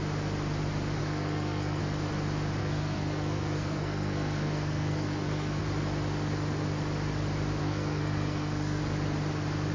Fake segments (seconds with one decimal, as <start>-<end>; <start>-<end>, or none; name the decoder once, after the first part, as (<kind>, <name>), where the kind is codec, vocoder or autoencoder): 1.0-1.8 (codec, SNAC); 2.6-5.6; 7.6-8.8